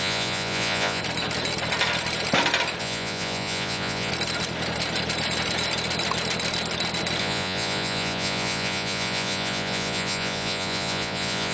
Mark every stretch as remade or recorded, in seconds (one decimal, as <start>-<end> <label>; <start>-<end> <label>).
0.0-1.0 remade; 1.0-2.8 recorded; 2.8-4.1 remade; 4.1-7.2 recorded; 7.2-11.5 remade